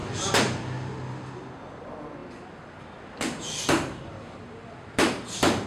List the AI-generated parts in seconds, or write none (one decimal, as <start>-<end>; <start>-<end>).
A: 2.2-5.7